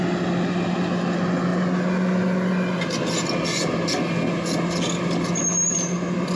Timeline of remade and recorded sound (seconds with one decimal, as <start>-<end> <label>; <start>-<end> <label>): 0.0-6.4 recorded